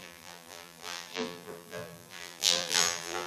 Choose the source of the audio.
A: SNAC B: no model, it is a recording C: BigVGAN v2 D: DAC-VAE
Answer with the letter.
C